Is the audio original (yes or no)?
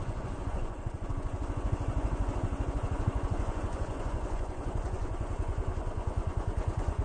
no